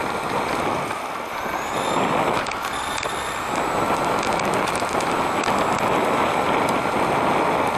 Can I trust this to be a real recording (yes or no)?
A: yes